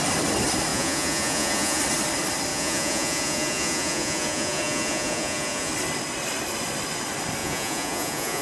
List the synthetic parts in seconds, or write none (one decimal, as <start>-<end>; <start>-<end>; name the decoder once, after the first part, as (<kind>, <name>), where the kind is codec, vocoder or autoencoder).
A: 0.7-1.8 (vocoder, Vocos); 2.5-5.7; 7.4-8.4